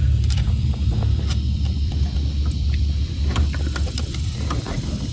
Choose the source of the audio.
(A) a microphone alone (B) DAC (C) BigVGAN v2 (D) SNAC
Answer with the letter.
C